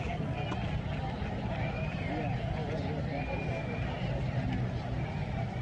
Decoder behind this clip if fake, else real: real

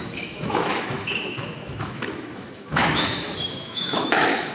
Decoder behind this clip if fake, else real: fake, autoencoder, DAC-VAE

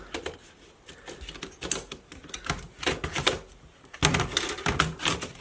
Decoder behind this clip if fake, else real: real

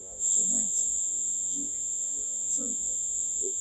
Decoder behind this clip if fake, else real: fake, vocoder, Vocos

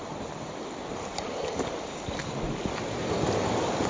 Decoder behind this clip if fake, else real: fake, vocoder, BigVGAN v2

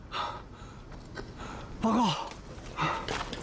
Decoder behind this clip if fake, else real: real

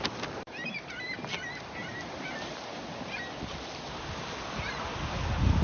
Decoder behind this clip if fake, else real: real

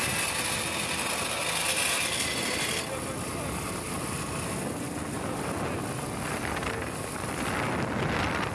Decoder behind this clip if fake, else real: real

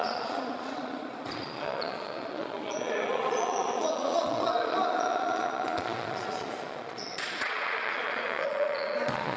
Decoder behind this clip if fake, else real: fake, vocoder, Vocos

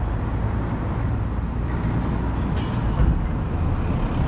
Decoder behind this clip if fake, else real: real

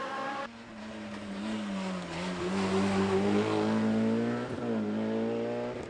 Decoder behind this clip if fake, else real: real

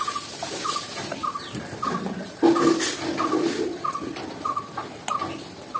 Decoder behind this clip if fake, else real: real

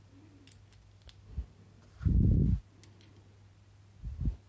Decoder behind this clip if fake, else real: real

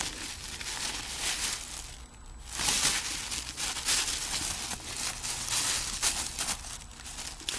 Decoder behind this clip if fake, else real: real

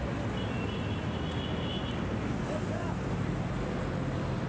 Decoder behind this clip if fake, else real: real